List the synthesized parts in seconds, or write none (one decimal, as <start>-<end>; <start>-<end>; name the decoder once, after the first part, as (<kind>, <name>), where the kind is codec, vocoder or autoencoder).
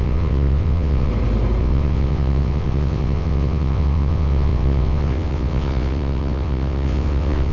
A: 0.0-1.1 (vocoder, WaveNeXt); 1.6-7.5